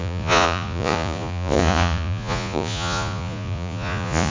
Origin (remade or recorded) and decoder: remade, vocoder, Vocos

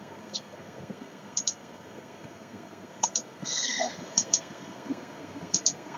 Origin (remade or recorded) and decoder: remade, codec, SNAC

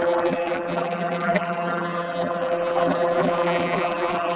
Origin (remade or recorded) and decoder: remade, vocoder, BigVGAN v2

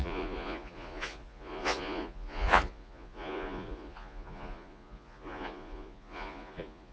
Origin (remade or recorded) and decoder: remade, vocoder, Vocos